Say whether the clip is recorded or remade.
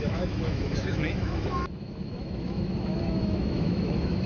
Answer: remade